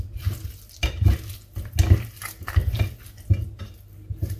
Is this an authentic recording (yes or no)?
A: yes